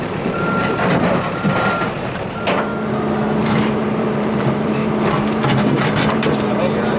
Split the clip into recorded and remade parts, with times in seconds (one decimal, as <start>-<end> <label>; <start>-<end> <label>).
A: 0.0-2.7 remade; 2.7-3.4 recorded; 3.4-4.8 remade; 4.8-6.2 recorded; 6.2-7.0 remade